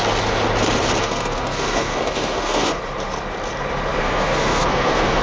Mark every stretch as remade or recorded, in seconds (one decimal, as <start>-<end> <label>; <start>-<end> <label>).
0.0-1.0 recorded; 1.0-2.8 remade; 2.8-4.0 recorded; 4.0-5.2 remade